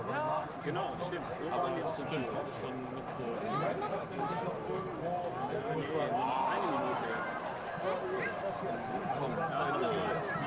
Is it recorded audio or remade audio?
recorded